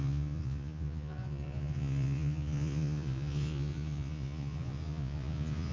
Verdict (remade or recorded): remade